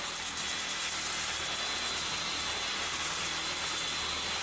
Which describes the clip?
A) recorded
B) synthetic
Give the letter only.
A